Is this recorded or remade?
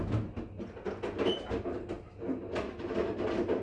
recorded